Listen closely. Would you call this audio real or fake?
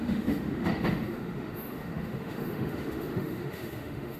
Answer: fake